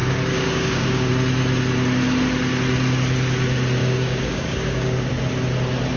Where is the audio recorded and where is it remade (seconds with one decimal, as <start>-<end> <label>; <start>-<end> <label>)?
0.0-1.1 remade; 1.1-3.8 recorded; 3.8-5.1 remade; 5.1-6.0 recorded